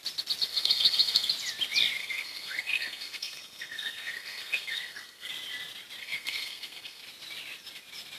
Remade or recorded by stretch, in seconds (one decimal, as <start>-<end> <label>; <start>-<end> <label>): 0.0-0.5 recorded; 0.5-1.3 remade; 1.3-2.0 recorded; 2.0-5.3 remade; 5.3-6.0 recorded; 6.0-7.0 remade; 7.0-8.2 recorded